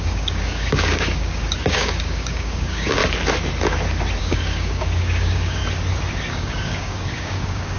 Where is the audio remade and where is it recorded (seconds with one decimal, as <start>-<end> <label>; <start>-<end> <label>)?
0.0-3.0 remade; 3.0-4.2 recorded; 4.2-5.6 remade; 5.6-6.3 recorded; 6.3-7.8 remade